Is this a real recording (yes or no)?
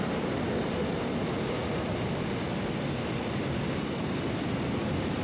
yes